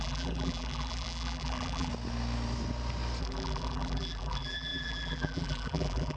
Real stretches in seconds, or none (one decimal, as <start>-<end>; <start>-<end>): 1.9-3.2